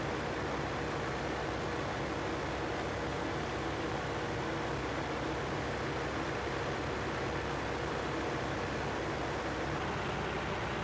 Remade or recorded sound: recorded